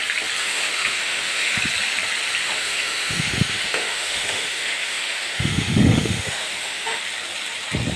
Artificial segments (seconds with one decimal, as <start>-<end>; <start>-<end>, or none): 0.4-1.5; 2.4-7.0